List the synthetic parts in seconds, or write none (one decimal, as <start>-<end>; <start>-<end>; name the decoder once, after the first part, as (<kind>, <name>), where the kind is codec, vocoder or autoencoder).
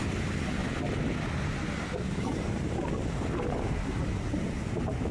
none